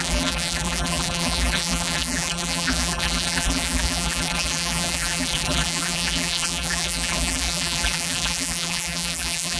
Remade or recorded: remade